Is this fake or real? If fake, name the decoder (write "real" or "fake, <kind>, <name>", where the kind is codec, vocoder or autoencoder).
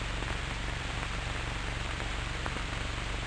fake, vocoder, BigVGAN v2